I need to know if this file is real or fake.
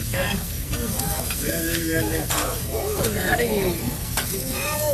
fake